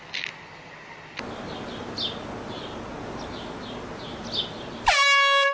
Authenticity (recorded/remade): recorded